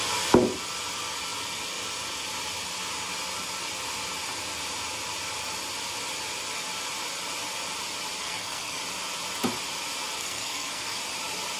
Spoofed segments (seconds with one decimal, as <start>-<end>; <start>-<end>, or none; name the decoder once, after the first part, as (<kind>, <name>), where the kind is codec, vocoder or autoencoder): 8.2-8.8 (codec, SNAC); 10.2-11.0